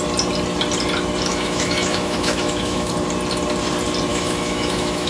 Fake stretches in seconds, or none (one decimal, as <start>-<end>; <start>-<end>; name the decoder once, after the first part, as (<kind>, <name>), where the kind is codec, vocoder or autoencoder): 1.3-2.9 (autoencoder, DAC-VAE); 4.1-5.1

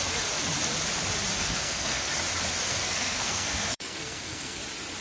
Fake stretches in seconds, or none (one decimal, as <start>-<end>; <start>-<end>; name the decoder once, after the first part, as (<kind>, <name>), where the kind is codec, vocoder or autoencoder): 1.4-2.1 (codec, SNAC); 2.7-4.6

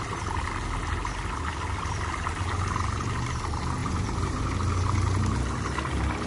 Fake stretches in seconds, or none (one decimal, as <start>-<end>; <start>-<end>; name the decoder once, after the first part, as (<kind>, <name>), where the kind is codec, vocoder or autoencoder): 3.8-4.4 (vocoder, BigVGAN v2)

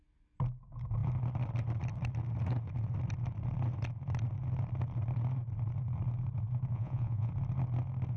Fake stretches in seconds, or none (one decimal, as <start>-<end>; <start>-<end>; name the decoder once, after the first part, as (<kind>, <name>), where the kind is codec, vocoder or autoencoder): 6.7-7.3 (vocoder, Vocos)

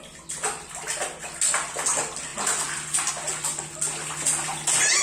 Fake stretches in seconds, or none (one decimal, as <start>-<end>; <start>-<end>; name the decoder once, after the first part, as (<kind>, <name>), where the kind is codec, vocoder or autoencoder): none